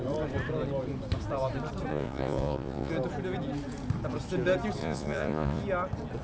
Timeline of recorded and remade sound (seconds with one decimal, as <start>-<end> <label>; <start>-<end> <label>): 0.0-1.9 recorded; 1.9-2.9 remade; 2.9-4.8 recorded; 4.8-5.6 remade; 5.6-6.2 recorded